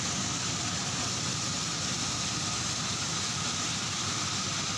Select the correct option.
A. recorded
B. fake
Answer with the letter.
A